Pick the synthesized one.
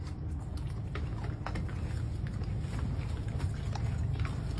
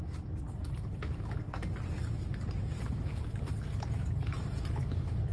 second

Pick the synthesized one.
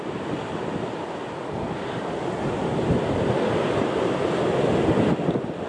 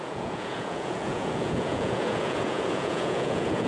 second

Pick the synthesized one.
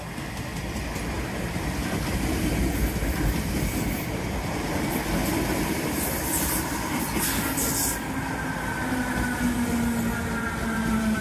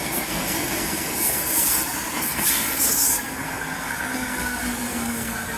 second